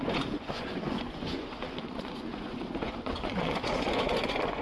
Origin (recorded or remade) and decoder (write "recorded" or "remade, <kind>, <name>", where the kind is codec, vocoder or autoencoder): remade, vocoder, Vocos